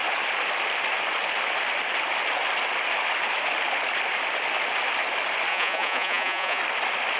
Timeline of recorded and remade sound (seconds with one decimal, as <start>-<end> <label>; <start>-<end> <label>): 0.0-5.5 recorded; 5.5-6.6 remade; 6.6-7.2 recorded

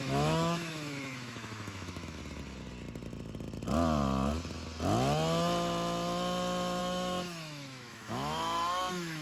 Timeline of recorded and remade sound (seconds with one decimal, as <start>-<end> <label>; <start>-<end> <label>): 0.0-2.2 remade; 2.2-6.8 recorded; 6.8-9.2 remade

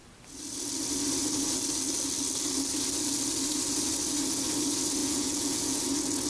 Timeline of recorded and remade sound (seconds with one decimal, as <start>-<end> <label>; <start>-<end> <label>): 0.0-5.0 recorded; 5.0-5.8 remade; 5.8-6.3 recorded

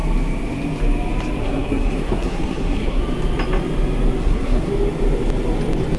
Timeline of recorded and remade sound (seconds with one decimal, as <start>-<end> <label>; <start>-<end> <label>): 0.0-1.4 recorded; 1.4-3.0 remade; 3.0-4.2 recorded; 4.2-4.7 remade; 4.7-6.0 recorded